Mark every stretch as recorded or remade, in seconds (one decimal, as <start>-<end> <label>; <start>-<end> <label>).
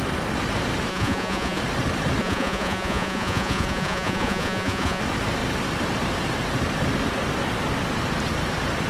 0.0-0.9 recorded; 0.9-1.6 remade; 1.6-2.2 recorded; 2.2-5.0 remade; 5.0-8.9 recorded